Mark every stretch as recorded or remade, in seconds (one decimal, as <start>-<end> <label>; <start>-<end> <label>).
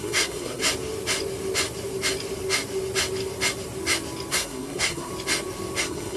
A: 0.0-0.6 remade; 0.6-4.3 recorded; 4.3-5.1 remade; 5.1-5.8 recorded; 5.8-6.2 remade